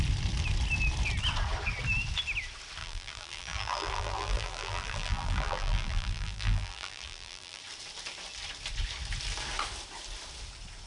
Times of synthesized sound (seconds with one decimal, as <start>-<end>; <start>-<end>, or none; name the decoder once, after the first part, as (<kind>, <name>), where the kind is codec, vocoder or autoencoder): 2.8-7.6 (vocoder, BigVGAN v2)